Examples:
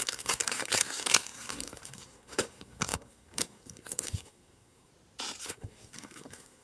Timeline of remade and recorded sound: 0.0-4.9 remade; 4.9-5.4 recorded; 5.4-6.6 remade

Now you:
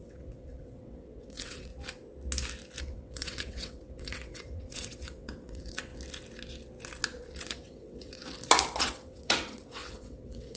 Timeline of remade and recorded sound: 0.0-1.7 remade; 1.7-2.8 recorded; 2.8-5.9 remade; 5.9-7.4 recorded; 7.4-8.2 remade; 8.2-8.8 recorded; 8.8-10.6 remade

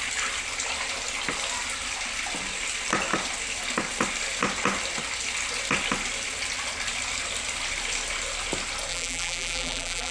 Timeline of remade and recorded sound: 0.0-8.9 recorded; 8.9-10.1 remade